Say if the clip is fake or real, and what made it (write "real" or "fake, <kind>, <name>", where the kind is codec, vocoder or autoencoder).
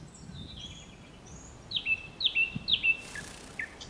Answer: real